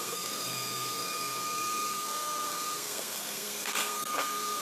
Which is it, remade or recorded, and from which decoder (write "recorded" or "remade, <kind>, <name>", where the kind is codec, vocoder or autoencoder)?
remade, codec, SNAC